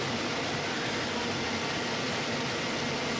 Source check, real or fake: fake